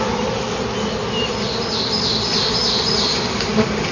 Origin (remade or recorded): recorded